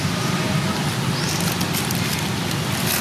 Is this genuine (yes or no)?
yes